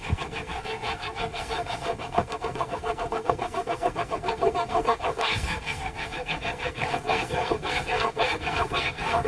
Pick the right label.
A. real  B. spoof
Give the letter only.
B